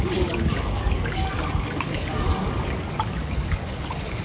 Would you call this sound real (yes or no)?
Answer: no